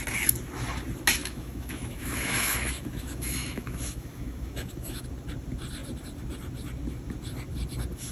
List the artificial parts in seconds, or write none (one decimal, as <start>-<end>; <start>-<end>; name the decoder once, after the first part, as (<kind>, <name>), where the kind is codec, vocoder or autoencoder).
1.2-5.0 (autoencoder, DAC-VAE)

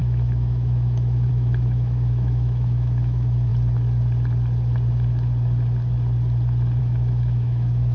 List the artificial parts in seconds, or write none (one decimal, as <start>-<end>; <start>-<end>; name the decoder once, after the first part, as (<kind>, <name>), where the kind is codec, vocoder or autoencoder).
0.0-3.5 (autoencoder, DAC-VAE); 6.8-7.9

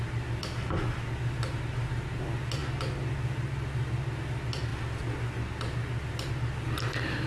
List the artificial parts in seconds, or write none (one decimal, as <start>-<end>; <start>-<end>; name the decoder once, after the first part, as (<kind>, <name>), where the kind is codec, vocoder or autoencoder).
none

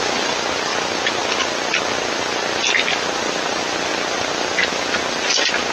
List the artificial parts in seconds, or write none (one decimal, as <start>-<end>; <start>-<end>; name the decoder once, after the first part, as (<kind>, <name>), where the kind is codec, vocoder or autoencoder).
none

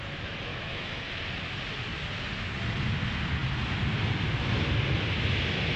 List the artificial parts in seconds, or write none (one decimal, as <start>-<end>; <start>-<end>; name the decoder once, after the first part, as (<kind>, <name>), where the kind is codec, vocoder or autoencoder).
0.5-1.2 (autoencoder, DAC-VAE)

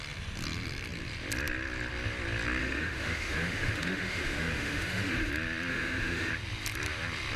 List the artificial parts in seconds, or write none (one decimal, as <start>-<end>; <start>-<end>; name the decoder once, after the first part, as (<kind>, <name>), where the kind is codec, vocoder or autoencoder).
2.6-5.3 (autoencoder, DAC-VAE); 5.7-6.3